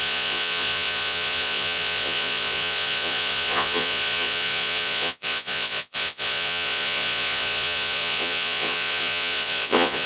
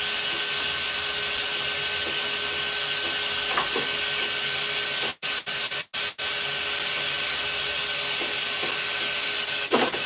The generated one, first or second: first